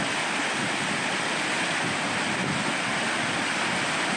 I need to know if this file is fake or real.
real